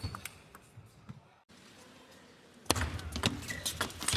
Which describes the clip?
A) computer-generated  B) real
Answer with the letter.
B